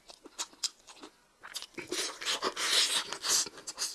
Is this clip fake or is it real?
real